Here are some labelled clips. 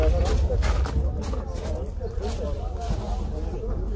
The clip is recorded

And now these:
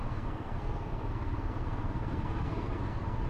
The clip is remade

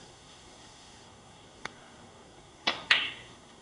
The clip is remade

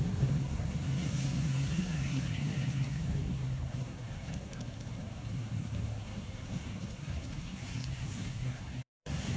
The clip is remade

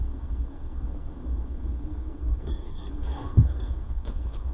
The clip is remade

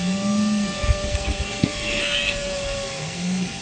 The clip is remade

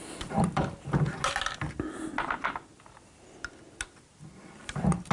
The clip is recorded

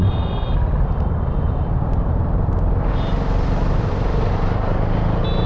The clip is recorded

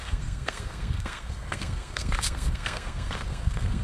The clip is remade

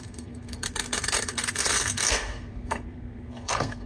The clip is remade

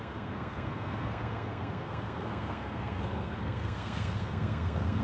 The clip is remade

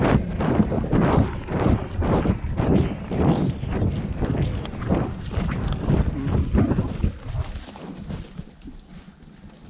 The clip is recorded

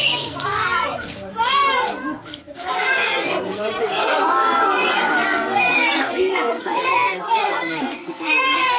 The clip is remade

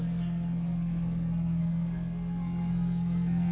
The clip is remade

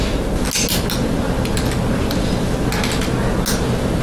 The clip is recorded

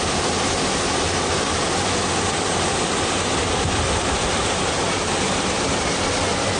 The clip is recorded